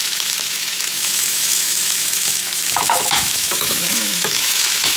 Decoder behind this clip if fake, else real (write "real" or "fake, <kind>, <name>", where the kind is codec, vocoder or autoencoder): fake, autoencoder, DAC-VAE